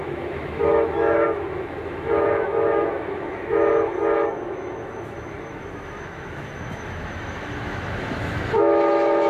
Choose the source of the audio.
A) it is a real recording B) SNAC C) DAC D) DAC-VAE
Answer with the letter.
D